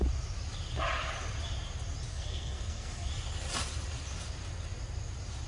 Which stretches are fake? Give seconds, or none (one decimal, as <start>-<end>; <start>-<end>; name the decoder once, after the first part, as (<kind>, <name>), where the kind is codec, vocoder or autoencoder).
2.1-3.1 (codec, SNAC)